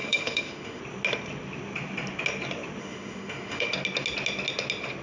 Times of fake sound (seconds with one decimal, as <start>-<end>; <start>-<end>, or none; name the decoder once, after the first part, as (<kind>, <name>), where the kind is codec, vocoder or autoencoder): 0.0-0.8 (autoencoder, DAC-VAE); 2.8-3.7